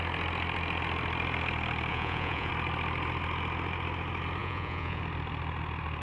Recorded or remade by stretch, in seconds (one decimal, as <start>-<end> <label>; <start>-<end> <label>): 0.0-1.9 recorded; 1.9-2.5 remade; 2.5-4.4 recorded; 4.4-5.0 remade; 5.0-6.0 recorded